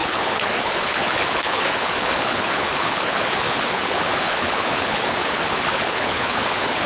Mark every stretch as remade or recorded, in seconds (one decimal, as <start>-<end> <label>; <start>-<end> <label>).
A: 0.0-6.9 remade